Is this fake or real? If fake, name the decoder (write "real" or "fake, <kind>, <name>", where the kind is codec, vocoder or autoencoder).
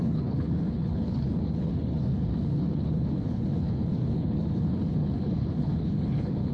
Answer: fake, codec, HILCodec